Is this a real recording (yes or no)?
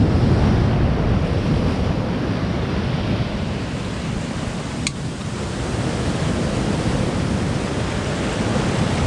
yes